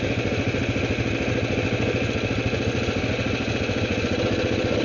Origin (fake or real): real